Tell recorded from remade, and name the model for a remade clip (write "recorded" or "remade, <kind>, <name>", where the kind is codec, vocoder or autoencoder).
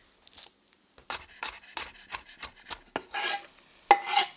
recorded